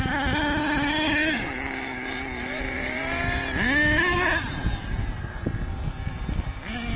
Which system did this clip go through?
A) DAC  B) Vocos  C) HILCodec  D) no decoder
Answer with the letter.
D